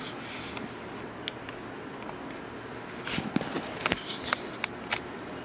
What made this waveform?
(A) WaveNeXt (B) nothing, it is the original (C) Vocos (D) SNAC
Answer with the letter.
B